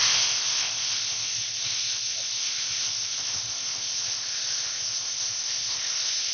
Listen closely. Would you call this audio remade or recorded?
remade